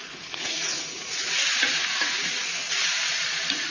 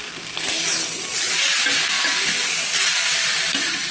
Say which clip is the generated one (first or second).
first